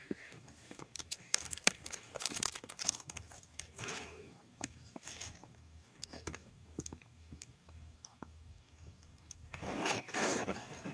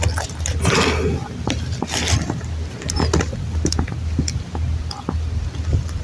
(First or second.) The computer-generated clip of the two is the first